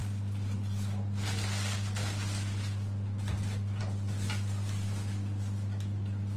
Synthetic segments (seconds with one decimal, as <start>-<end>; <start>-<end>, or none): none